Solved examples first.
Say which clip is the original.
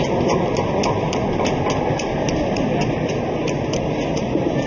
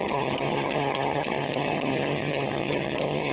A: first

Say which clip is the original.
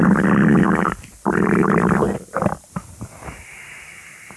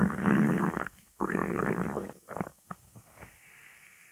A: first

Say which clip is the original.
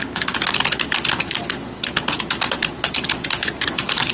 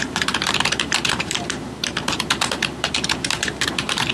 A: first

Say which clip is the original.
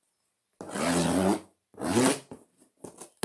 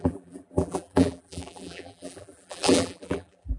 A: first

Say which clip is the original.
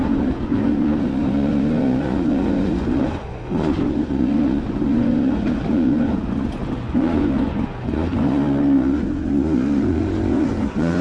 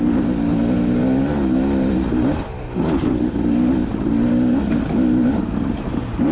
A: second